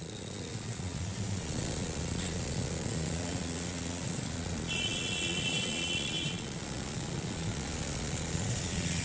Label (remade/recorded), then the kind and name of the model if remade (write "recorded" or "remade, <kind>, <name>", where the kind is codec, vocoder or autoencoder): remade, vocoder, Vocos